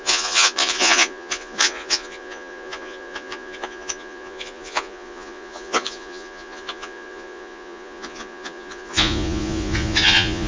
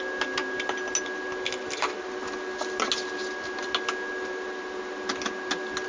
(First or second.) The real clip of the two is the second